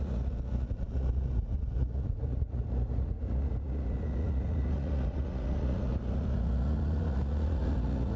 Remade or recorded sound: remade